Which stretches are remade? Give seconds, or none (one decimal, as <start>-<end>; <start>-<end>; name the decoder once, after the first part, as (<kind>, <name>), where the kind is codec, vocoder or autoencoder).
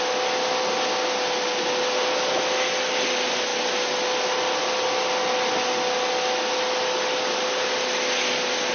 none